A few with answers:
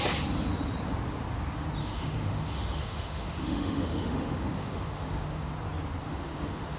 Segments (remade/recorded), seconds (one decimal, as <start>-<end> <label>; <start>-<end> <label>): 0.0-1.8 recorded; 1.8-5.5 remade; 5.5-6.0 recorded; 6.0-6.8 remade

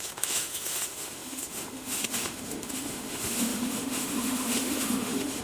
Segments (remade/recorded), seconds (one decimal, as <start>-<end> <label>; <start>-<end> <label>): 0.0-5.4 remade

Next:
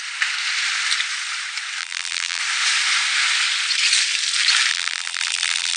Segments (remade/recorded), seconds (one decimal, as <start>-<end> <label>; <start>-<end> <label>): 0.0-1.8 recorded; 1.8-2.4 remade; 2.4-4.7 recorded; 4.7-5.8 remade

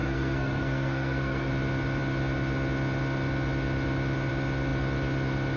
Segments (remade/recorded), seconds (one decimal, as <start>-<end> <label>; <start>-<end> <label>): 0.0-1.5 remade; 1.5-5.6 recorded

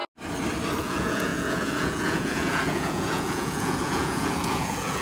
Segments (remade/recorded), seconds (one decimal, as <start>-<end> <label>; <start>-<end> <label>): 0.0-0.8 recorded; 0.8-5.0 remade

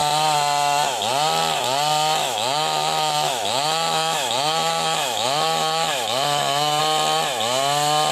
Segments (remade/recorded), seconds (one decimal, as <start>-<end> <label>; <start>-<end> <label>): 0.0-2.2 recorded; 2.2-6.8 remade; 6.8-8.1 recorded

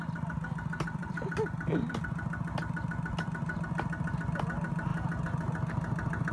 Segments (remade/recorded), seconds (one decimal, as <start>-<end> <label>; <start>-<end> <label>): 0.0-6.3 recorded